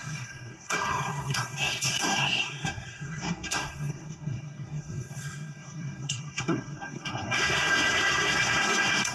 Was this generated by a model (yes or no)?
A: yes